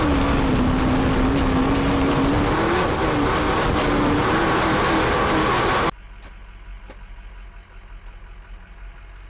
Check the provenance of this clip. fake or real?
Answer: real